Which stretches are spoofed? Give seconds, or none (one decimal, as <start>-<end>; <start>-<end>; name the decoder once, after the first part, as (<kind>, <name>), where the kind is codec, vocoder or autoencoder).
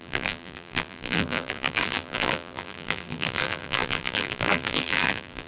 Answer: 0.0-5.5 (vocoder, BigVGAN v2)